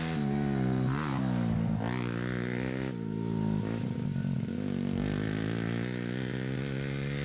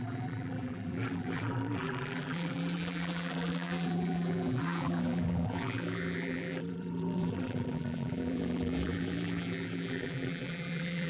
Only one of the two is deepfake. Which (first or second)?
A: second